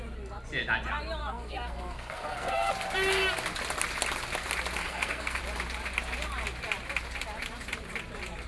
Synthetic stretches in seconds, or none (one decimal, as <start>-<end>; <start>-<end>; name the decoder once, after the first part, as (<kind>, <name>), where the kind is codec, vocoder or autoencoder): 1.2-2.7 (codec, SNAC); 4.8-5.4